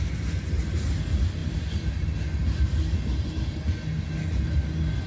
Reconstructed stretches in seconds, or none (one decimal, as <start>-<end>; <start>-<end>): none